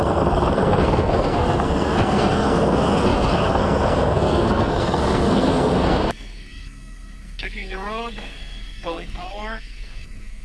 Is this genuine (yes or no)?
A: no